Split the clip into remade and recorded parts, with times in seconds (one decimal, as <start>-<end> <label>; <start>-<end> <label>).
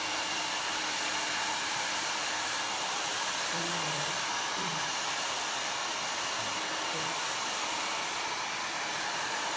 0.0-4.7 remade; 4.7-5.5 recorded; 5.5-5.9 remade; 5.9-6.7 recorded; 6.7-9.6 remade